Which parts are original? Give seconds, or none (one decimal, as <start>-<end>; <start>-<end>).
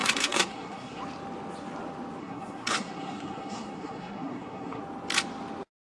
1.0-2.2; 4.8-5.8